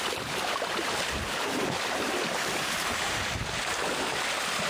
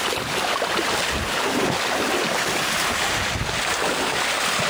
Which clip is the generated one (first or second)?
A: first